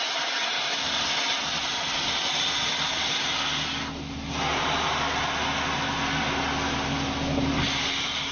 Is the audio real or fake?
real